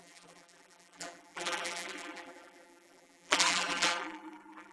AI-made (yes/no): yes